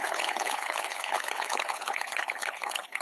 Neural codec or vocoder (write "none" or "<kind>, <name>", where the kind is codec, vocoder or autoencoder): codec, HILCodec